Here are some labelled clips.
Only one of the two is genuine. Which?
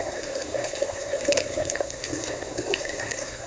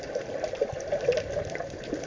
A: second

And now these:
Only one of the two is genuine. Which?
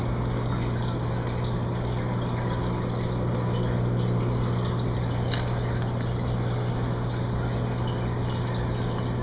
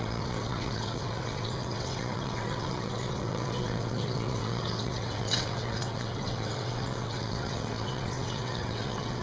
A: first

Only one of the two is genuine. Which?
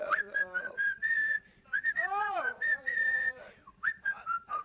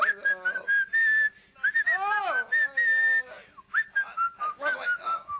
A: second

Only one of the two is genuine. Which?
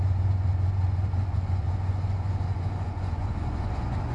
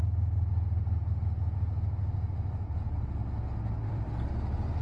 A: second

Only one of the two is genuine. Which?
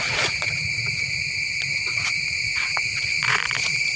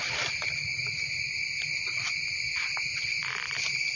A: second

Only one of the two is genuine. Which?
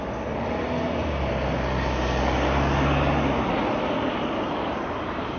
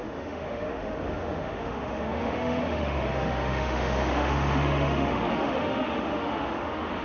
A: first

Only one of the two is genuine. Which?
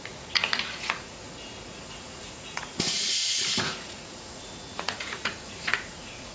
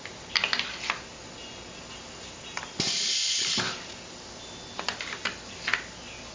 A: second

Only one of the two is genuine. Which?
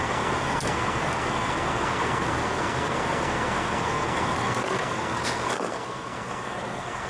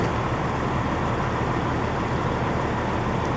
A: second